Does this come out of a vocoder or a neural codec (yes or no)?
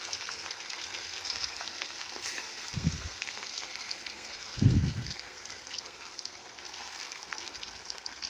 yes